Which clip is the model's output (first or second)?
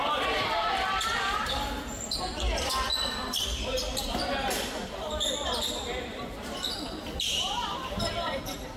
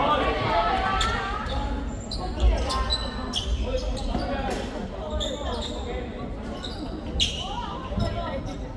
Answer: first